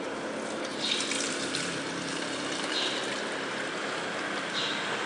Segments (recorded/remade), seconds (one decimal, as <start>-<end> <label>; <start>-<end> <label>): 0.0-0.7 recorded; 0.7-3.8 remade; 3.8-5.1 recorded